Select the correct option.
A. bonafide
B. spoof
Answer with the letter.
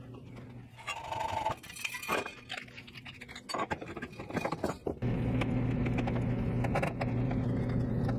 A